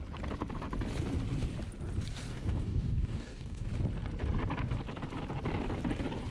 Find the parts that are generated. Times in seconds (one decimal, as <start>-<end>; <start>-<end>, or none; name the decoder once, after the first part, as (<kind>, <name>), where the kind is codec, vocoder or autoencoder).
2.3-3.7 (codec, DAC)